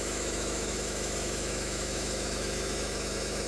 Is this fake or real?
fake